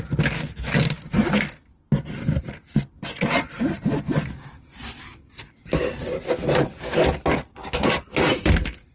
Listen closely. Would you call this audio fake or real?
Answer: real